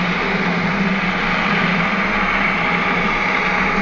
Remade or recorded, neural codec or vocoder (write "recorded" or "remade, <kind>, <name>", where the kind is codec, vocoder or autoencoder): recorded